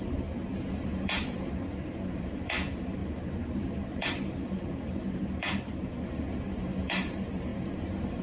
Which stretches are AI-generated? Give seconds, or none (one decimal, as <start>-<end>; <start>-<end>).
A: 0.0-8.2